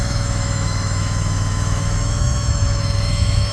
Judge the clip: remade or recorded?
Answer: remade